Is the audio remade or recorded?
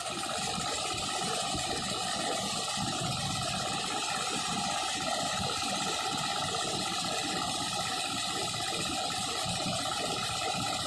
recorded